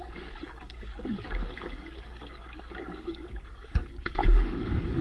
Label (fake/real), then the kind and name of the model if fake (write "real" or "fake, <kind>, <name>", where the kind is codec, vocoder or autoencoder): fake, codec, DAC